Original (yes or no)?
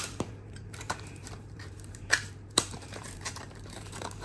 no